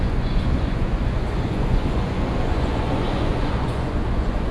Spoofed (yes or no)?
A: yes